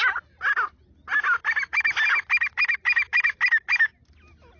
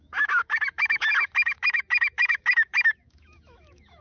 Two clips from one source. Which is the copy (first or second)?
second